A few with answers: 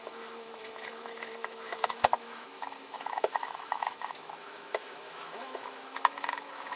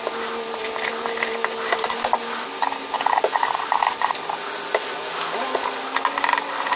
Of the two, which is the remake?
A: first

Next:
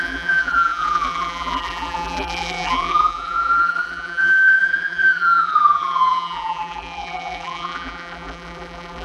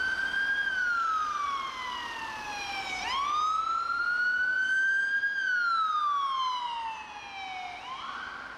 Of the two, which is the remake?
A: first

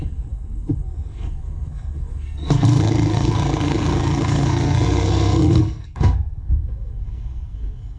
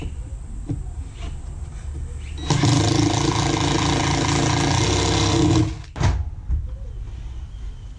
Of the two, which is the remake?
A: first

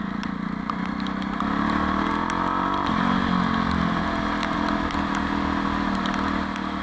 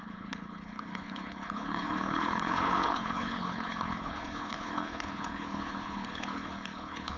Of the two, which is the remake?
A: second